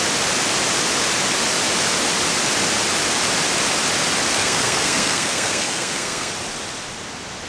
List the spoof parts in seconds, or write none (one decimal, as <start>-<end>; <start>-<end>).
4.4-6.3